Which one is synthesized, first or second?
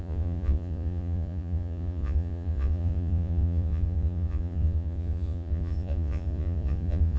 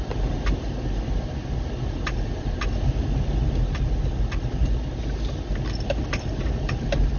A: first